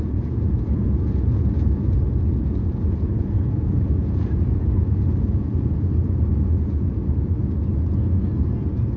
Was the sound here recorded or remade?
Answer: remade